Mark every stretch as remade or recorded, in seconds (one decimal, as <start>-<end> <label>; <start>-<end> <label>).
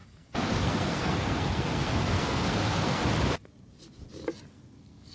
0.0-3.0 remade; 3.0-4.5 recorded; 4.5-5.1 remade